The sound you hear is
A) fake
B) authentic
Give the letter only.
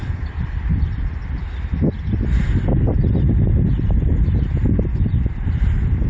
B